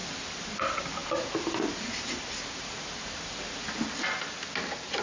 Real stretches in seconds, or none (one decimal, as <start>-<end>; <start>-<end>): 0.0-1.0; 4.0-5.0